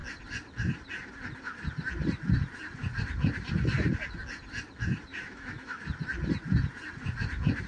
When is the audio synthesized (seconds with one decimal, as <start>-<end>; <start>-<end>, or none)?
5.1-5.8

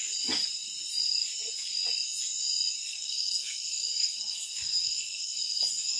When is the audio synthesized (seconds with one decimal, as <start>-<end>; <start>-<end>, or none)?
2.9-6.0

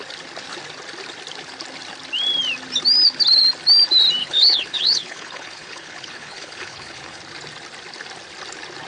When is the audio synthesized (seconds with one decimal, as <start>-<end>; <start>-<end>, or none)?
4.2-7.2